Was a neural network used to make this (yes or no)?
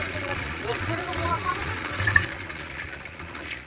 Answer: yes